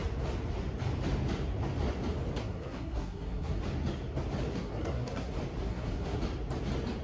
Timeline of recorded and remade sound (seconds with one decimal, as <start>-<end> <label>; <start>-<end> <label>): 0.0-2.4 recorded; 2.4-3.6 remade; 3.6-4.5 recorded; 4.5-5.3 remade; 5.3-5.7 recorded; 5.7-6.2 remade; 6.2-7.0 recorded